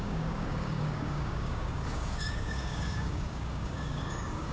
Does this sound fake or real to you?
fake